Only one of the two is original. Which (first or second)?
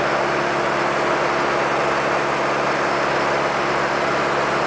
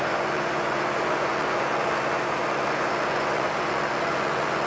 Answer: first